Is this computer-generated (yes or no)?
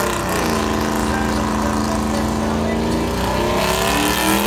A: no